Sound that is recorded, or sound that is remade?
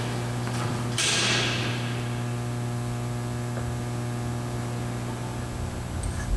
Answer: recorded